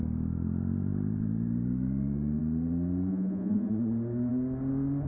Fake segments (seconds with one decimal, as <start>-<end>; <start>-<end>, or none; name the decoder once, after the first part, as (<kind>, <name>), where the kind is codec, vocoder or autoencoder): 3.1-3.7 (vocoder, Vocos)